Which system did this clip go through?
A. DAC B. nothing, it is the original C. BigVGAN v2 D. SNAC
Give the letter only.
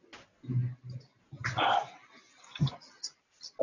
B